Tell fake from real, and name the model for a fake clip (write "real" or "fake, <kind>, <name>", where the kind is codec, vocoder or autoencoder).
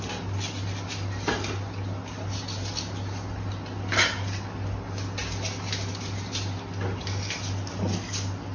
real